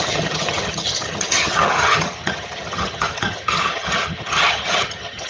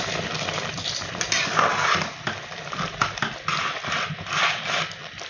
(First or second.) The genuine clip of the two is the second